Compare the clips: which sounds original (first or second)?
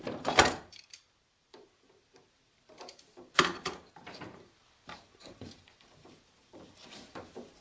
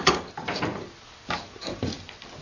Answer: second